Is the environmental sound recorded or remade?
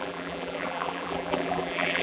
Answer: remade